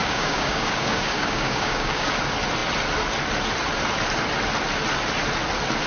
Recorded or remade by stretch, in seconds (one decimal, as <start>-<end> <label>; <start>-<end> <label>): 0.0-2.1 remade; 2.1-5.9 recorded